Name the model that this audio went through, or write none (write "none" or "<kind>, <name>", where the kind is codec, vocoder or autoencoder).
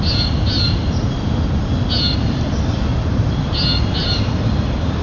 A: none